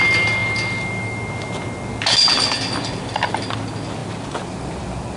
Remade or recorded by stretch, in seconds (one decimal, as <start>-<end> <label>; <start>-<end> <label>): 0.0-5.2 recorded